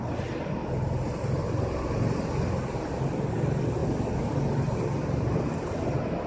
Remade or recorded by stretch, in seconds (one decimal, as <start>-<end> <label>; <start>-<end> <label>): 0.0-6.3 recorded